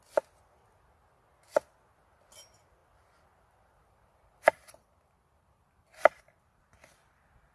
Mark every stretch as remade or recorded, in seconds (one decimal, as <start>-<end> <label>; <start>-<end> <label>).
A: 0.0-2.8 recorded; 2.8-6.6 remade; 6.6-7.5 recorded